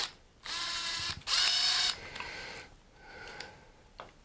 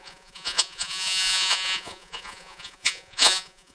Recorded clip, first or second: first